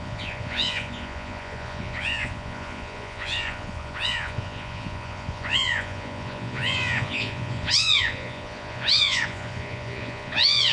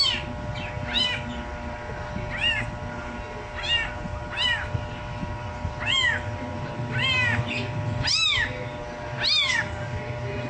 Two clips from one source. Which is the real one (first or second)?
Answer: second